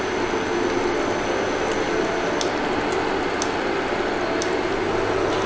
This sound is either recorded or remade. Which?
recorded